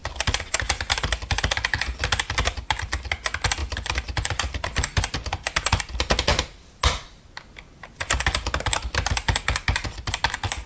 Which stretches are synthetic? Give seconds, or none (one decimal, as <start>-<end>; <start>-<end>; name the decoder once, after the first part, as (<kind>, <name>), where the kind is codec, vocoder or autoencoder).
0.0-0.8 (vocoder, BigVGAN v2); 3.6-5.8